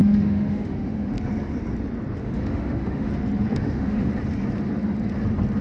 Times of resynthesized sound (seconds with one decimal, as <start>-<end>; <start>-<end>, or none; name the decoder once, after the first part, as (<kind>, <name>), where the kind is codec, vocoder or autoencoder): 0.0-1.1 (autoencoder, DAC-VAE); 2.2-3.1; 3.5-4.1